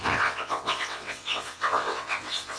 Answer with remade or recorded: remade